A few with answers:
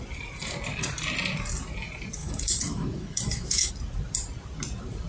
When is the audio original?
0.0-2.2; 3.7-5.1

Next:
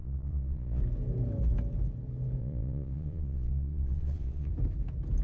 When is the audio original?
0.8-2.4; 4.5-5.2

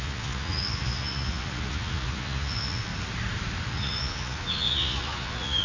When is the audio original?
2.9-3.7

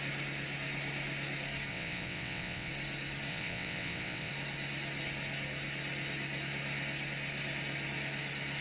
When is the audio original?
0.0-1.7; 2.7-3.3; 4.3-8.6

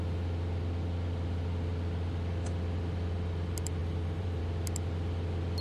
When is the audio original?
0.0-3.8; 4.4-5.6